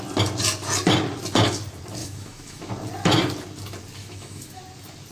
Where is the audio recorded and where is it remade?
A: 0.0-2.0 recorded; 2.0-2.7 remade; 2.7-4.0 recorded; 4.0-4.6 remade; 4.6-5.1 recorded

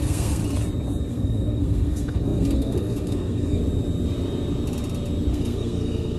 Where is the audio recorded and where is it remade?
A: 0.0-0.4 remade; 0.4-1.1 recorded; 1.1-3.6 remade; 3.6-5.3 recorded; 5.3-6.2 remade

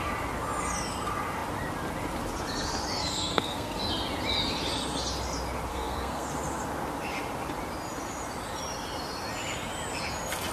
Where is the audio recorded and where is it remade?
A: 0.0-3.0 recorded; 3.0-3.8 remade; 3.8-5.7 recorded; 5.7-6.3 remade; 6.3-10.5 recorded

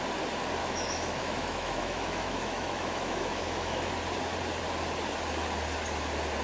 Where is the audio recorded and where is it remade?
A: 0.0-0.6 recorded; 0.6-3.9 remade; 3.9-6.4 recorded